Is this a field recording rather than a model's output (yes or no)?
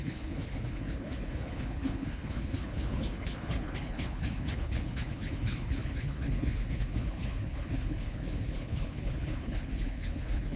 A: no